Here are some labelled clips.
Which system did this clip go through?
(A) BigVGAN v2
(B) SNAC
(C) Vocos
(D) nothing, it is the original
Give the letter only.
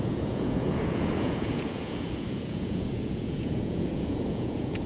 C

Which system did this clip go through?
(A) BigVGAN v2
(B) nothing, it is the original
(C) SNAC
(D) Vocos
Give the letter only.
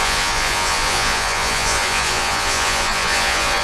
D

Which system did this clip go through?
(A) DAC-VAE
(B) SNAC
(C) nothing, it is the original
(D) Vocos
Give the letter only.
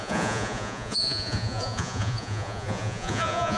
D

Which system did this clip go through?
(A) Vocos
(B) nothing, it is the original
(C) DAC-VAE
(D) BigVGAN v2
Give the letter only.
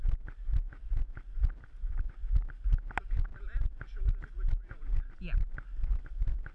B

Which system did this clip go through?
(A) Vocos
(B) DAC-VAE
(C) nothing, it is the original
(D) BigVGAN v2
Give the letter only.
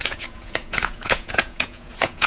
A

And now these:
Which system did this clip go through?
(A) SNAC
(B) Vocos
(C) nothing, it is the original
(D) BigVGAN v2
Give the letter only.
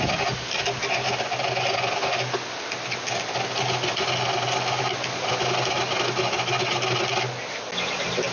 C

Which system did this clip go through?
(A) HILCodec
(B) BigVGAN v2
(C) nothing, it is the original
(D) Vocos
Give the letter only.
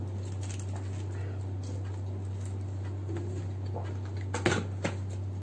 C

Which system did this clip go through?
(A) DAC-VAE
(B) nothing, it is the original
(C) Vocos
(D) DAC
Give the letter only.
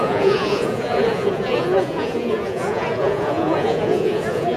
C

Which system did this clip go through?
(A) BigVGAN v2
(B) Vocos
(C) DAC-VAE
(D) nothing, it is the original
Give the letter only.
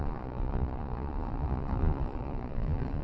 B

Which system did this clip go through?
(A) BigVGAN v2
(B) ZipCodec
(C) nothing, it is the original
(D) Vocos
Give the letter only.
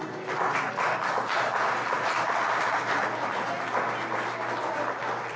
C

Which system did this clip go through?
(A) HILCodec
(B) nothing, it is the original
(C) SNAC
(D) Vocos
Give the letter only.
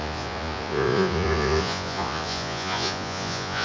D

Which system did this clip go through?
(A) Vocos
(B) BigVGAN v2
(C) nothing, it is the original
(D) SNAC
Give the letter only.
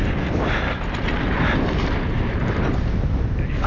C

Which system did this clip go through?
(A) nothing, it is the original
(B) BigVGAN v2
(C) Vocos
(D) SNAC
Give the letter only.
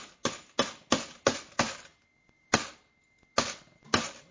A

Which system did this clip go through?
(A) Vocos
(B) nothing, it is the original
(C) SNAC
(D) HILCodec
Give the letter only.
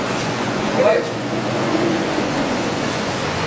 A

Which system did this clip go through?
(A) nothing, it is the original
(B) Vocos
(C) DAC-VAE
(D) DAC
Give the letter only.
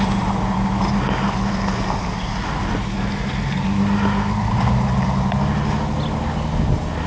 A